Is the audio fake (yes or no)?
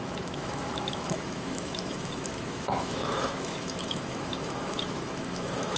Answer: yes